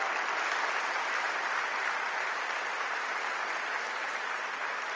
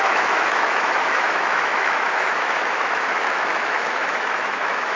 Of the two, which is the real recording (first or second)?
first